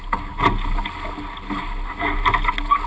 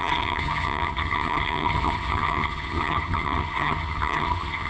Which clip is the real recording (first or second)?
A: first